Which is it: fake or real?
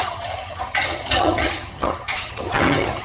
fake